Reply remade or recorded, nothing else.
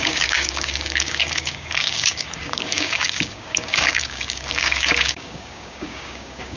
remade